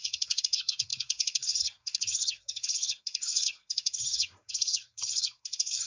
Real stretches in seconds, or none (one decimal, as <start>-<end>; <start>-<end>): none